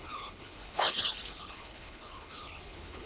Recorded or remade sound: remade